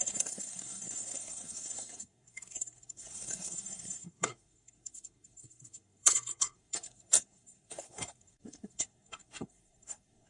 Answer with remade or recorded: remade